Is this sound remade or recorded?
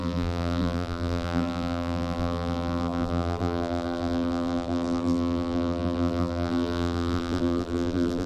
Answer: remade